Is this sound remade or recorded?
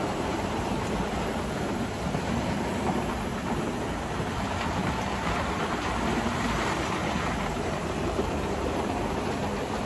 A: remade